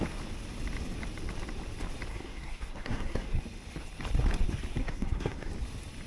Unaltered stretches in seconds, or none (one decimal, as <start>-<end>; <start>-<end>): 0.0-2.1; 3.4-4.8; 5.5-6.1